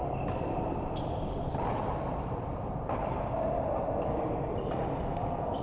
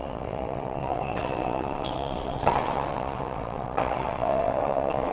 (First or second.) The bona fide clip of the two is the first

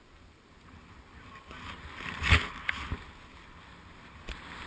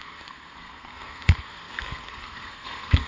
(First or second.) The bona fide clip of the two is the first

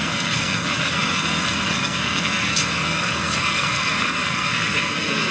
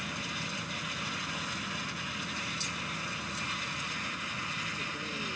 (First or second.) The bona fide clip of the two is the second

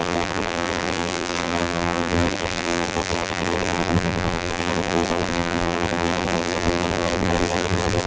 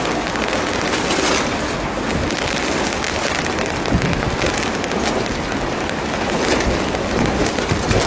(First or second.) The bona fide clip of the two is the second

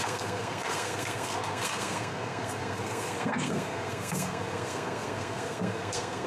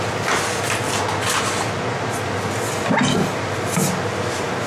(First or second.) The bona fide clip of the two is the second